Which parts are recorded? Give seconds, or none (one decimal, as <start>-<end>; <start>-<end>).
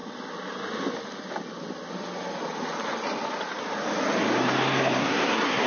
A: 0.0-5.0